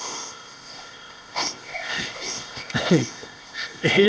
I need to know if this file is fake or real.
fake